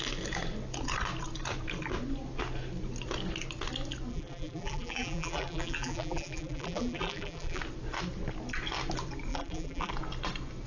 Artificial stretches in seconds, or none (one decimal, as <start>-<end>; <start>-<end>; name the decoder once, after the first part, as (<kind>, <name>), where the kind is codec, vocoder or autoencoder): 4.1-7.6 (vocoder, BigVGAN v2); 9.3-9.9